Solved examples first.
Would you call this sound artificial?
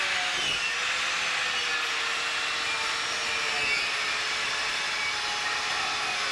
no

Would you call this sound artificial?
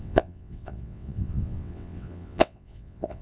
yes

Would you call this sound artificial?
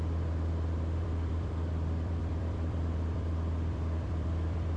yes